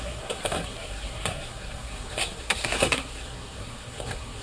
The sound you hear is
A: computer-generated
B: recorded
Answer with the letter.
A